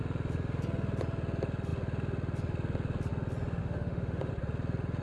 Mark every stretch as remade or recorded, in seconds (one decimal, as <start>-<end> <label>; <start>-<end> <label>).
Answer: 0.0-3.6 recorded; 3.6-4.3 remade; 4.3-5.0 recorded